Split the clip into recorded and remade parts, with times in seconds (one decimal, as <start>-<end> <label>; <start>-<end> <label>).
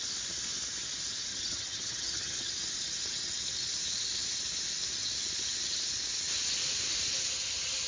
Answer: 0.0-1.3 recorded; 1.3-2.5 remade; 2.5-7.9 recorded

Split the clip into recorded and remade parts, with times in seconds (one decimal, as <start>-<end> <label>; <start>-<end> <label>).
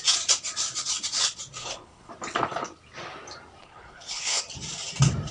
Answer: 0.0-1.6 recorded; 1.6-2.1 remade; 2.1-3.6 recorded; 3.6-4.4 remade; 4.4-5.3 recorded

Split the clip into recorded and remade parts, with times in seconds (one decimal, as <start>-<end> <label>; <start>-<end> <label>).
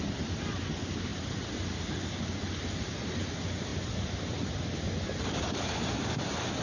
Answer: 0.0-6.6 recorded